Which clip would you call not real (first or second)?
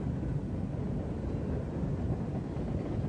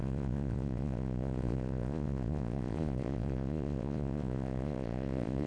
second